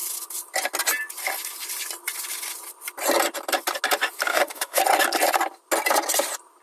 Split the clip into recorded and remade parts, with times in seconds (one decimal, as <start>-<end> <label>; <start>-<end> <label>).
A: 0.0-4.3 recorded; 4.3-4.8 remade; 4.8-6.6 recorded